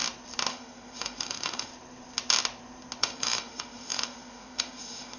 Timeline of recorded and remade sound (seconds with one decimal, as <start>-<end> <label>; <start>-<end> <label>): 0.0-0.5 recorded; 0.5-1.7 remade; 1.7-3.0 recorded; 3.0-5.2 remade